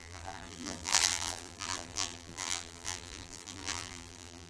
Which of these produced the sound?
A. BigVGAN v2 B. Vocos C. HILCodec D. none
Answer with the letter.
A